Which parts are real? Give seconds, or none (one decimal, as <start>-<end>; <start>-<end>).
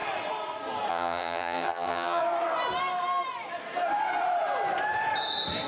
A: 0.0-0.9; 2.2-5.7